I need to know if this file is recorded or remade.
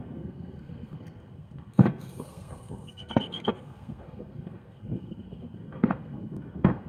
remade